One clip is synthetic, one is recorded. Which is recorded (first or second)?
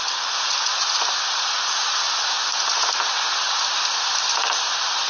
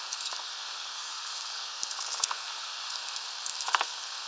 first